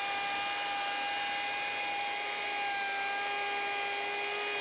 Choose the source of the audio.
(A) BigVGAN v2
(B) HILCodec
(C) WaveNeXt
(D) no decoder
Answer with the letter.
D